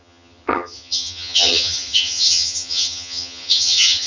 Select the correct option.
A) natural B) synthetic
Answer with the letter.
B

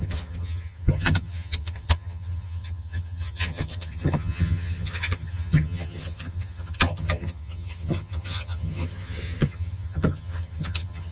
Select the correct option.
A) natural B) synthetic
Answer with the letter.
B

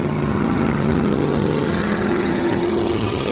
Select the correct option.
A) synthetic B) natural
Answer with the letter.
A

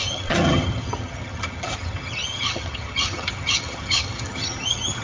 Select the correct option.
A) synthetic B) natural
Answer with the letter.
A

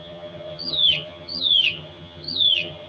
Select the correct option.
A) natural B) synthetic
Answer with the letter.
B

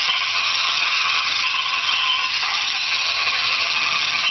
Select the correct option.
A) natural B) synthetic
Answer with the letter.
B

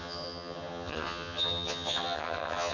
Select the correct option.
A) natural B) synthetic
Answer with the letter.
B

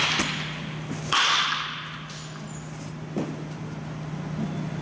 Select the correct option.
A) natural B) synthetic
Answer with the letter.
A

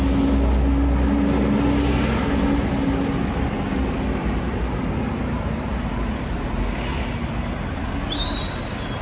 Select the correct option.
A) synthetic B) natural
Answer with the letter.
B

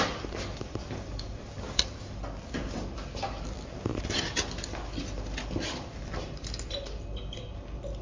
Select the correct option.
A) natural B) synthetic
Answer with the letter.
A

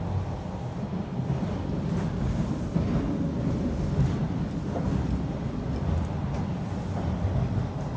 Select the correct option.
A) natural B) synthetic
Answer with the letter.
A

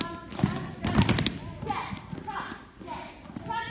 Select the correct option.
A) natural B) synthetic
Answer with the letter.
A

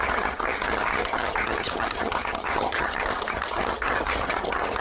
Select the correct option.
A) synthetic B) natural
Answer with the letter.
A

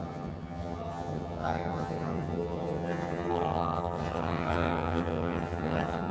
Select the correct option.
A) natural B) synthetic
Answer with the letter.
B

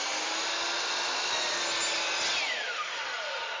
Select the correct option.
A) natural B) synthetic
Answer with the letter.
A